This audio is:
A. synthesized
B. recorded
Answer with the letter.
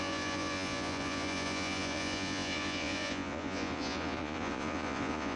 A